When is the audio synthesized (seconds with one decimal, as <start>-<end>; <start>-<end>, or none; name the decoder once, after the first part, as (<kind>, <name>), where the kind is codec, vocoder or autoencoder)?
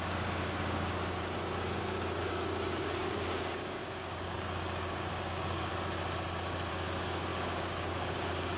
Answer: 0.0-5.7 (codec, DAC); 6.7-8.6